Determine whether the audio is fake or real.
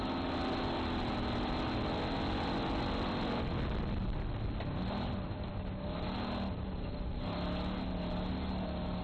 real